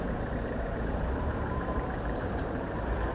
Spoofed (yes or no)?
yes